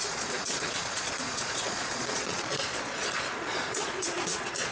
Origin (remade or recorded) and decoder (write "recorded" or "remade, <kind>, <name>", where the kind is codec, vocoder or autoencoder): remade, vocoder, Vocos